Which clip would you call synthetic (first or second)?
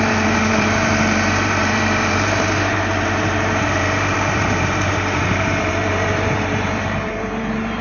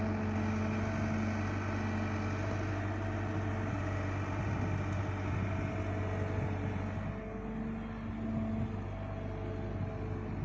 first